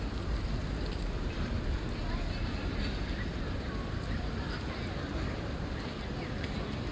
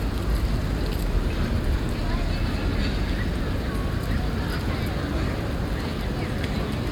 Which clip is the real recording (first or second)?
second